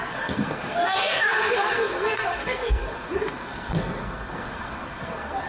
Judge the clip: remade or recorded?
remade